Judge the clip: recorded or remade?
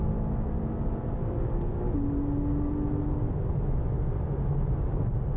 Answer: recorded